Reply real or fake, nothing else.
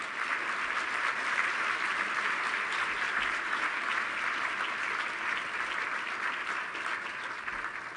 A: real